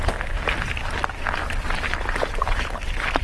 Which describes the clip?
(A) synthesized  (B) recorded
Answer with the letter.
B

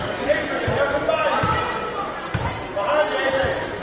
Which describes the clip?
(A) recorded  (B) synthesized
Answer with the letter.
A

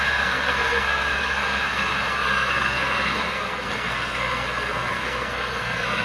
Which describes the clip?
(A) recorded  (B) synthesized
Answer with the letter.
B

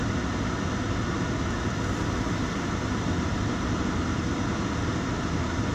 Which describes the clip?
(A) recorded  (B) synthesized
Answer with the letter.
A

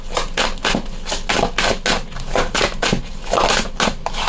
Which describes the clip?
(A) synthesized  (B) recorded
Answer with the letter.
B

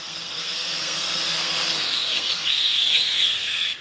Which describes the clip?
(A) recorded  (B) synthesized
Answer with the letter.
B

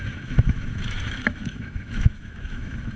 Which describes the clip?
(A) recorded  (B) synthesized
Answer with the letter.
B